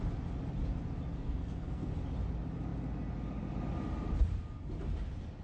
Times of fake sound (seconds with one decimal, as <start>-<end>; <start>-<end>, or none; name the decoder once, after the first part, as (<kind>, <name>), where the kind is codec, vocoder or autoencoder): 1.1-1.9 (codec, SNAC)

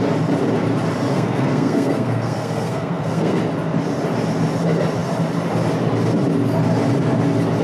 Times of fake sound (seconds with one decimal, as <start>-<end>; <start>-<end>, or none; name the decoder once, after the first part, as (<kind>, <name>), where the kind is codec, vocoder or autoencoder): 1.1-3.4 (codec, SNAC)